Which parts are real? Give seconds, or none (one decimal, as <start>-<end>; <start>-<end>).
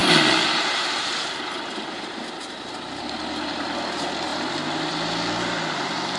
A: 0.0-6.2